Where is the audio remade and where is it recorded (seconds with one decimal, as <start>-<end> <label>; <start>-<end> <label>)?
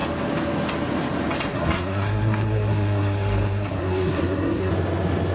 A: 0.0-1.5 recorded; 1.5-4.7 remade; 4.7-5.3 recorded